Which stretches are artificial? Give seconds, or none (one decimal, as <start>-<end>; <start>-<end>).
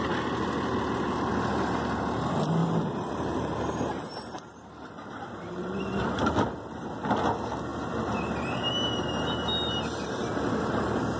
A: 2.6-5.8